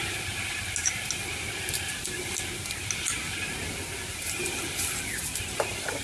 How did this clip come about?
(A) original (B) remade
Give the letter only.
A